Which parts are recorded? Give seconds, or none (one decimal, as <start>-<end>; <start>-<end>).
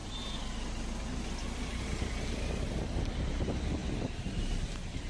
0.0-3.1